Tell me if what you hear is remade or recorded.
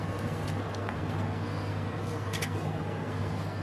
remade